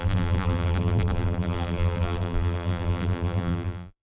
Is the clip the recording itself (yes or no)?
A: no